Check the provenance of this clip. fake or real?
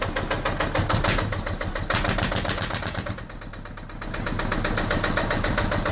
real